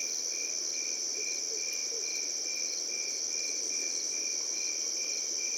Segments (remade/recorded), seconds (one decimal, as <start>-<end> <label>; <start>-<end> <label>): 0.0-5.6 recorded